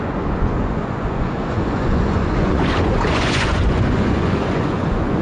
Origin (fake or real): fake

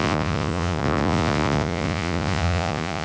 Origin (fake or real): fake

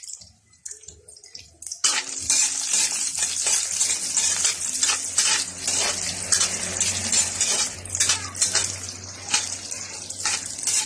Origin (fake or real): real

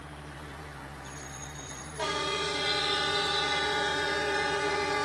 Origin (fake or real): fake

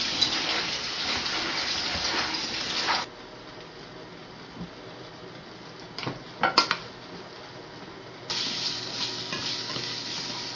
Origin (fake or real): real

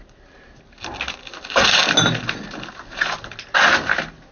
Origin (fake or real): real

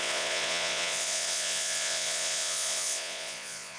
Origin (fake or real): fake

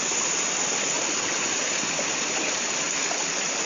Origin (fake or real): real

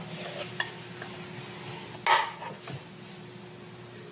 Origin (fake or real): real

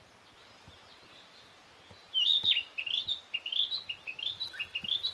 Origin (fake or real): real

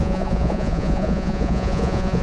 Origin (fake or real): fake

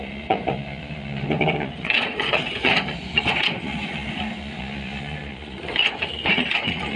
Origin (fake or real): fake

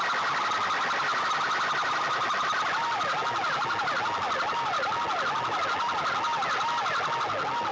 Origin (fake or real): real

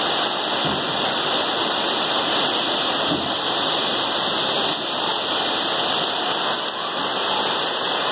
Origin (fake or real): real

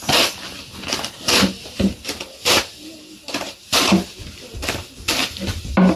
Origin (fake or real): real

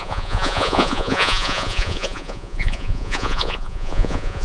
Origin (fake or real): fake